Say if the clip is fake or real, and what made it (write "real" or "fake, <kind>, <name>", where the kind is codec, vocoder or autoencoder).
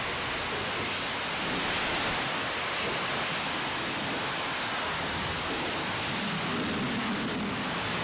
real